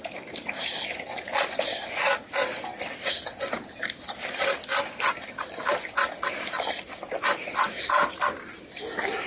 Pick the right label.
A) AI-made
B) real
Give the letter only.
B